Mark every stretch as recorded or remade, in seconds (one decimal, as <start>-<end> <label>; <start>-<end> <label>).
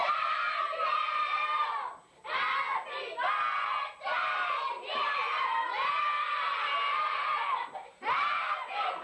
0.0-2.6 remade; 2.6-3.4 recorded; 3.4-9.0 remade